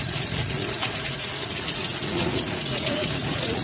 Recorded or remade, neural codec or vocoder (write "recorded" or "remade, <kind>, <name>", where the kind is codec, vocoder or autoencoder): remade, vocoder, Vocos